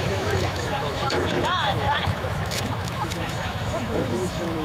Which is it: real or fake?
fake